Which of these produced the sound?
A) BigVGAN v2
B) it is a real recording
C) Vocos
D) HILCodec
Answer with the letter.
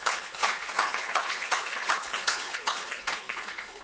D